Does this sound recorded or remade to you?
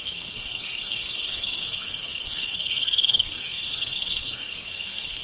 remade